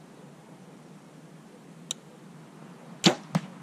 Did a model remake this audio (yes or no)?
no